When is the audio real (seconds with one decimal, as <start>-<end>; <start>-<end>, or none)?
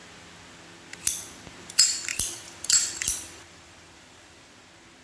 0.0-2.1; 4.5-5.0